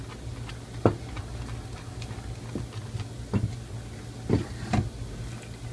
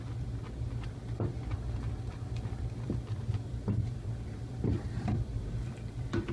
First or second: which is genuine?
first